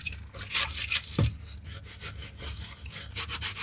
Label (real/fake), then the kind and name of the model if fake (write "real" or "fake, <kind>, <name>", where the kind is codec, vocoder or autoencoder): real